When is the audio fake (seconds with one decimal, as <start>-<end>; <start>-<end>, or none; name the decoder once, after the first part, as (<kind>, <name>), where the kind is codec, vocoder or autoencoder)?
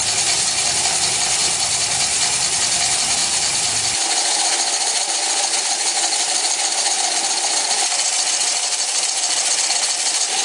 1.4-1.9 (vocoder, BigVGAN v2); 3.2-5.6